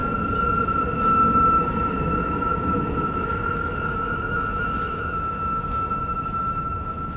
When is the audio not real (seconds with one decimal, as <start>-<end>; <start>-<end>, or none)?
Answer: 1.9-7.2